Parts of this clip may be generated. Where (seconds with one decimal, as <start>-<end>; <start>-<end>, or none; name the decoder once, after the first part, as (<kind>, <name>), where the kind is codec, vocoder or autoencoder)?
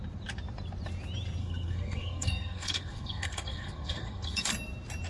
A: 1.4-4.5 (codec, SNAC)